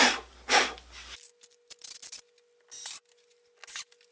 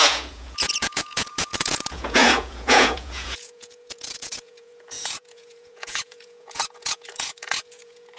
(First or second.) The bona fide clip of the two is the first